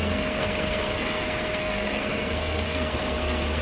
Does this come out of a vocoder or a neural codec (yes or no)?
yes